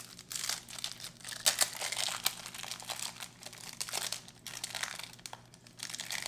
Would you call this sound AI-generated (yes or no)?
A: no